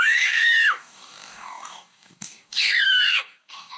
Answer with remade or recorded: remade